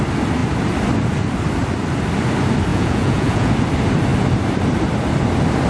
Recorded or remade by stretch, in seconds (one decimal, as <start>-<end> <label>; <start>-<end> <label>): 0.0-2.7 recorded; 2.7-3.5 remade; 3.5-5.7 recorded

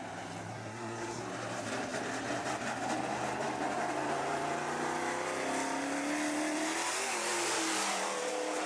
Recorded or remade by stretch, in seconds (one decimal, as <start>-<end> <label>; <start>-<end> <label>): 0.0-0.5 recorded; 0.5-1.2 remade; 1.2-8.7 recorded

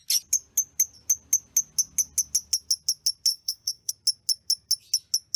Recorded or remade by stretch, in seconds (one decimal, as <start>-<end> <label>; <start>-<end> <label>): 0.0-3.3 recorded; 3.3-3.9 remade; 3.9-5.4 recorded

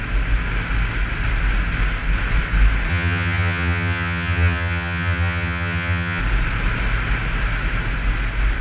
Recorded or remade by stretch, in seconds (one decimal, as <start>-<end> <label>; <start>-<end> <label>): 0.0-2.9 recorded; 2.9-6.2 remade; 6.2-8.6 recorded

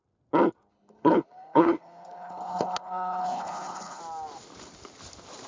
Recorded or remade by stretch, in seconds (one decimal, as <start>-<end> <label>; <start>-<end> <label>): 0.0-0.7 recorded; 0.7-4.0 remade; 4.0-5.5 recorded